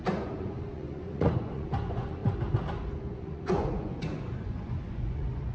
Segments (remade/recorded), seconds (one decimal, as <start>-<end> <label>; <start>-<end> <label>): 0.0-2.2 remade; 2.2-2.9 recorded; 2.9-5.5 remade